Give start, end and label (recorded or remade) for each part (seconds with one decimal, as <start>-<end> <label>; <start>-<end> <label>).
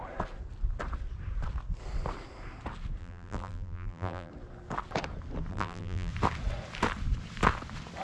0.0-3.0 recorded; 3.0-4.3 remade; 4.3-5.5 recorded; 5.5-6.1 remade; 6.1-8.0 recorded